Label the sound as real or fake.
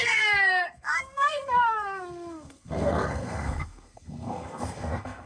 fake